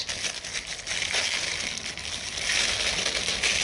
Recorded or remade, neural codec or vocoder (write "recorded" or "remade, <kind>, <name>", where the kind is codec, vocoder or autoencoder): recorded